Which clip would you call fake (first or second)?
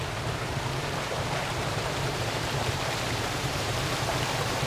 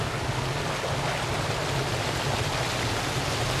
first